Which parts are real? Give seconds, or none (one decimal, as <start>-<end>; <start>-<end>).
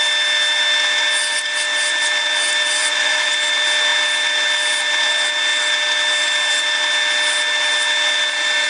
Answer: 0.0-2.8; 3.3-8.7